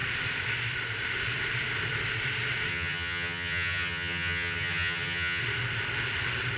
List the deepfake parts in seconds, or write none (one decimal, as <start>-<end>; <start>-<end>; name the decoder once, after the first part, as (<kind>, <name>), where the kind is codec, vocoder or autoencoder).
2.7-5.4 (vocoder, HiFi-GAN)